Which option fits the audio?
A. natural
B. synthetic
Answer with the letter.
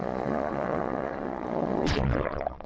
B